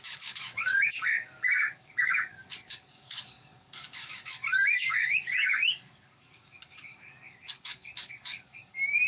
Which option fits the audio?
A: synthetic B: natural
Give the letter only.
A